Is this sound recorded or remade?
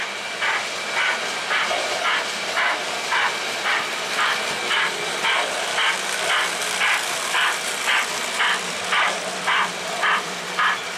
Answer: remade